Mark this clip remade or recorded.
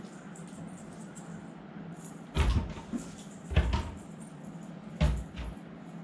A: recorded